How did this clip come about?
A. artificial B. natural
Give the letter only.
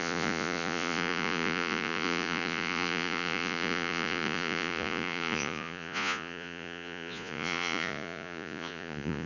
A